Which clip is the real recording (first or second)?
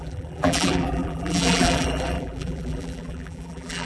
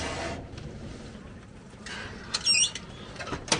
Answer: second